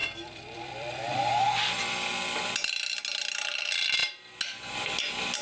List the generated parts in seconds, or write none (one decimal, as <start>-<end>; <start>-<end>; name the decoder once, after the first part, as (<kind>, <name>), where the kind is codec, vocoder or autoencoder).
0.0-1.3 (vocoder, BigVGAN v2)